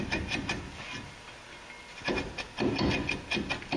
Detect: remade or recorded recorded